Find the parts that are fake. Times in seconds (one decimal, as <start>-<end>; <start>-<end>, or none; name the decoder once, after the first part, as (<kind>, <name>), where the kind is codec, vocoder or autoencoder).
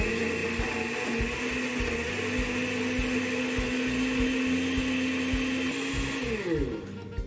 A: none